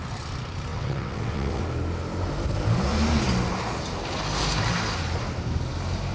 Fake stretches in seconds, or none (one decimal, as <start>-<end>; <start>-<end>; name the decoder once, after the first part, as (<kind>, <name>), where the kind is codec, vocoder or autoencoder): 0.7-1.6 (vocoder, WaveNeXt)